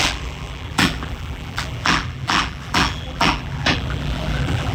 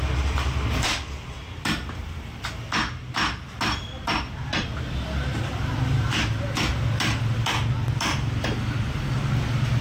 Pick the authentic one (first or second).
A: second